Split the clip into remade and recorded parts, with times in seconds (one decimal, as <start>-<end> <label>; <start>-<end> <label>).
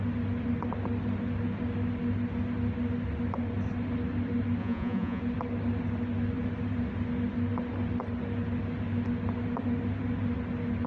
0.0-4.6 recorded; 4.6-5.2 remade; 5.2-10.9 recorded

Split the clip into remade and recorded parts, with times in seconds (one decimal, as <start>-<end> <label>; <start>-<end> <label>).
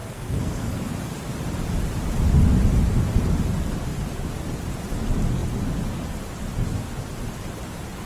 0.0-0.9 remade; 0.9-8.1 recorded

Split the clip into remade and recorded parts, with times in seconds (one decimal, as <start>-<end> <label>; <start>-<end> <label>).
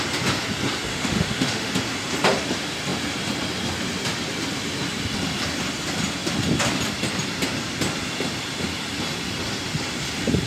0.0-0.9 recorded; 0.9-1.7 remade; 1.7-10.5 recorded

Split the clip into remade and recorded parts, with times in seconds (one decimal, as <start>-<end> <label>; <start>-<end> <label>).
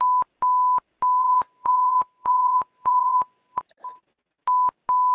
0.0-1.2 recorded; 1.2-3.6 remade; 3.6-5.1 recorded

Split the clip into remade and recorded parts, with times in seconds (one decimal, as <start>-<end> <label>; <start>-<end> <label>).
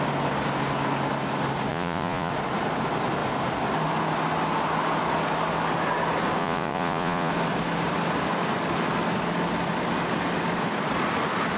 0.0-1.7 recorded; 1.7-2.3 remade; 2.3-6.4 recorded; 6.4-7.3 remade; 7.3-11.6 recorded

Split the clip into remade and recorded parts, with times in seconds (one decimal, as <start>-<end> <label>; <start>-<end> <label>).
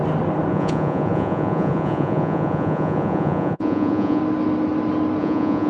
0.0-0.5 recorded; 0.5-4.2 remade; 4.2-5.2 recorded; 5.2-5.7 remade